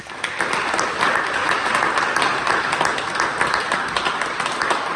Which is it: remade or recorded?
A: recorded